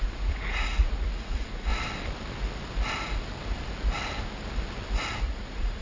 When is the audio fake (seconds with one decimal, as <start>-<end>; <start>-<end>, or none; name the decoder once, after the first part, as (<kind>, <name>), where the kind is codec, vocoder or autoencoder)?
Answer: 0.0-1.7 (vocoder, Vocos); 5.2-5.8